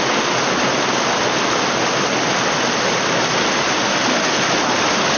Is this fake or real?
real